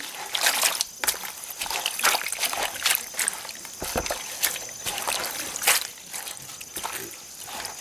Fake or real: real